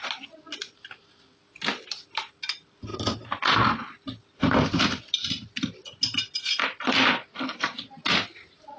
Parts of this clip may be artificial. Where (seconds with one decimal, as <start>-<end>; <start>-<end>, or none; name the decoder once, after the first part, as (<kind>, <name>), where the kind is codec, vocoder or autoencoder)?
none